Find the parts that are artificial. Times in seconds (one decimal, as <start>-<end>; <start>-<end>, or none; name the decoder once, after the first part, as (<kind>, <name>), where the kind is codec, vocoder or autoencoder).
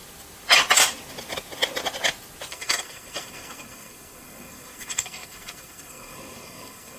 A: 2.5-7.0 (codec, SNAC)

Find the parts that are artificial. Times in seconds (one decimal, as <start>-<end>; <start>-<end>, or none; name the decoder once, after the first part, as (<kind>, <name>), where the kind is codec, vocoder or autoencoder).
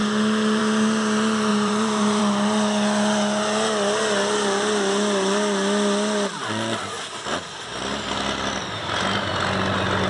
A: 1.5-2.2 (vocoder, BigVGAN v2)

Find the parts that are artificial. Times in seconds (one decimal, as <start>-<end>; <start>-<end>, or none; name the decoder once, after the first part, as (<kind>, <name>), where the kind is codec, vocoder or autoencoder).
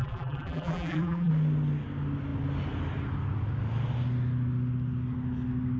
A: 0.0-1.3 (vocoder, BigVGAN v2)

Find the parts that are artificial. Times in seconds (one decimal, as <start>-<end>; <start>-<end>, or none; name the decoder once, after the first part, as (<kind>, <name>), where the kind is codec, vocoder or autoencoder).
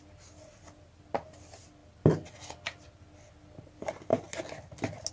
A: none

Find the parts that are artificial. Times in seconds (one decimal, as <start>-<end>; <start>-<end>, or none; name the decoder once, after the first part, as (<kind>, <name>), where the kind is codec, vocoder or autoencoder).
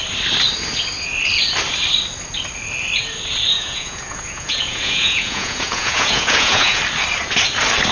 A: 3.5-6.8 (vocoder, Vocos)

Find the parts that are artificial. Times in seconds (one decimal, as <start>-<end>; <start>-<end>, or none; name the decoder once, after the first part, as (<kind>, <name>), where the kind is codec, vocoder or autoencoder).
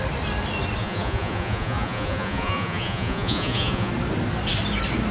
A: 0.8-3.9 (vocoder, Vocos)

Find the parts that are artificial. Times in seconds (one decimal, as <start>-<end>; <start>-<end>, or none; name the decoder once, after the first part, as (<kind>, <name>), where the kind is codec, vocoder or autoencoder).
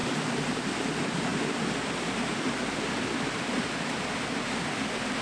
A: 0.0-0.7 (vocoder, BigVGAN v2)